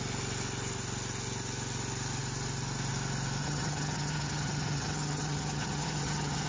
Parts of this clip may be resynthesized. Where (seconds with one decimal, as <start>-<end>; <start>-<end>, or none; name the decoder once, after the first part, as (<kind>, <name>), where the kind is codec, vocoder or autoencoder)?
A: 3.4-6.5 (vocoder, HiFi-GAN)